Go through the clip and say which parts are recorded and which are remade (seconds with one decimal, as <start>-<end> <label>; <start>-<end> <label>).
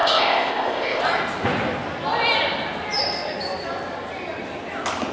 0.0-1.0 remade; 1.0-5.1 recorded